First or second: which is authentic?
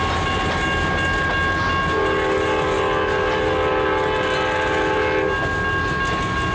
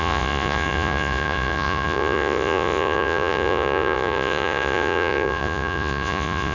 first